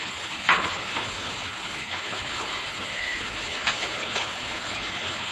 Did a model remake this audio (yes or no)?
yes